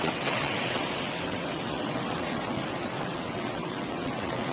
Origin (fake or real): fake